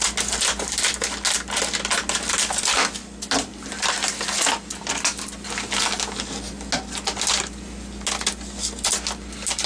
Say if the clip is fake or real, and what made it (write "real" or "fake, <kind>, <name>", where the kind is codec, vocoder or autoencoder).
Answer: real